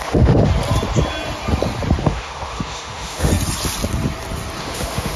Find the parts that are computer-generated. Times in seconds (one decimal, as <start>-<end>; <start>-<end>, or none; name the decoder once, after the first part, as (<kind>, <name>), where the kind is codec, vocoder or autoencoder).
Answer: 0.0-0.5 (autoencoder, DAC-VAE); 2.0-3.3; 4.6-5.2